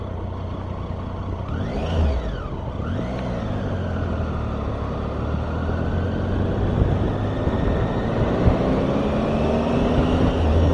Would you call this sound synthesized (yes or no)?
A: no